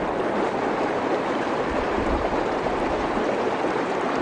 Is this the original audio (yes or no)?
yes